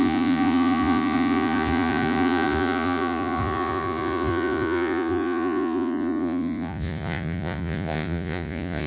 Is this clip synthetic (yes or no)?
yes